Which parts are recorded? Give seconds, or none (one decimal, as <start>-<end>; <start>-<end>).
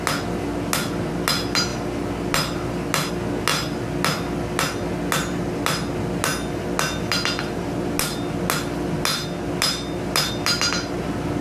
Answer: 0.0-11.4